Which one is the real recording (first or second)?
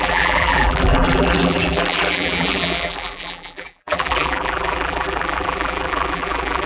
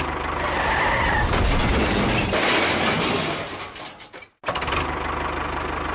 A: second